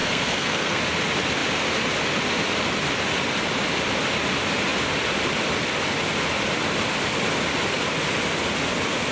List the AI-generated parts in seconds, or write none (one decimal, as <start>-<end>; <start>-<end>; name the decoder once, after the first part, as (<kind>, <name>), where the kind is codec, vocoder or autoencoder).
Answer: 0.0-0.8 (codec, SNAC)